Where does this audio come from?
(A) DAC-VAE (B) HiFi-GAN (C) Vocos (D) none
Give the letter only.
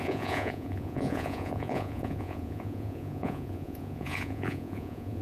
C